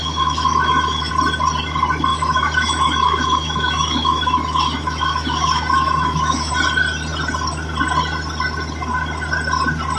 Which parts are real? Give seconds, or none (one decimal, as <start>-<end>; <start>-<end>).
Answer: 1.1-2.1; 6.5-10.0